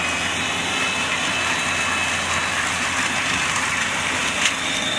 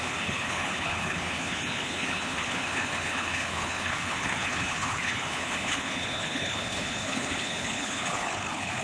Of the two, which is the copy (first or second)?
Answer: second